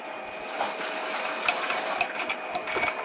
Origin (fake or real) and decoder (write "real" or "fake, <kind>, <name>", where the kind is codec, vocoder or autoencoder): real